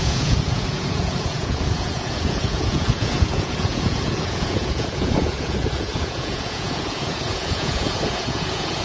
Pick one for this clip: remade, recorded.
remade